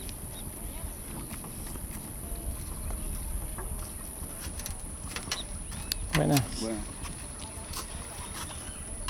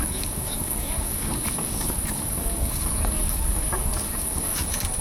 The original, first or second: first